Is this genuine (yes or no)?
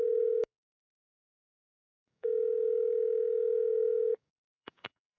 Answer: no